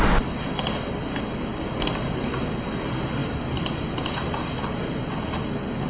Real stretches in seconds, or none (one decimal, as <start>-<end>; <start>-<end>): 0.0-5.9